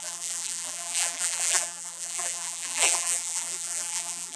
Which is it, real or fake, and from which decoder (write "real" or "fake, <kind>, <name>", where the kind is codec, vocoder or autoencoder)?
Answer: fake, vocoder, BigVGAN v2